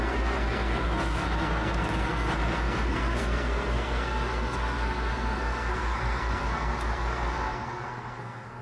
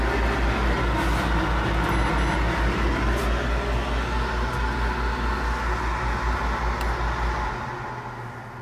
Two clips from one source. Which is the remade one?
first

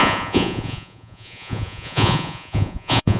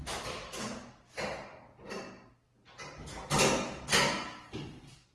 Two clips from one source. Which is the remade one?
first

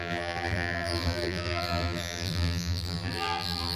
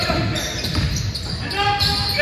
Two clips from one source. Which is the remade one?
first